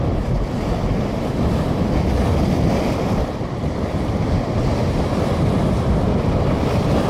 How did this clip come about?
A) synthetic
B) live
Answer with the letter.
B